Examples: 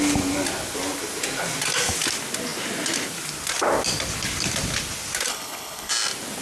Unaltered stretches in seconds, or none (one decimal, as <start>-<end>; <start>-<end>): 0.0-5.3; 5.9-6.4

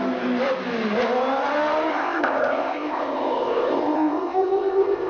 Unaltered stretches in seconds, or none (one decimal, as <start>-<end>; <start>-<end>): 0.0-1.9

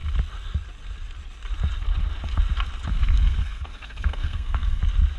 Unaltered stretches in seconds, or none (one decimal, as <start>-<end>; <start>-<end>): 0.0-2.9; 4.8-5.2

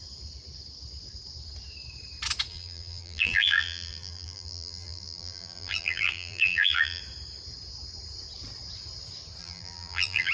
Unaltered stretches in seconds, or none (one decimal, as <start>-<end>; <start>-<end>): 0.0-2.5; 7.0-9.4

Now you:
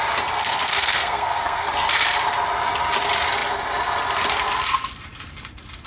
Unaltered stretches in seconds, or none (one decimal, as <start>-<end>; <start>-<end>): 0.0-0.4; 1.7-5.9

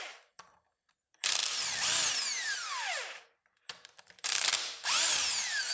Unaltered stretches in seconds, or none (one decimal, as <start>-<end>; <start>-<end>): 1.4-2.1